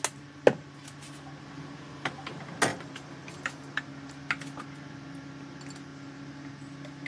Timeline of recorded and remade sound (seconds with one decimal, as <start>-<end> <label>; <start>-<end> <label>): 0.0-2.7 recorded; 2.7-3.8 remade; 3.8-7.1 recorded